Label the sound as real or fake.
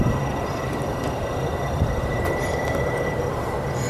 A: real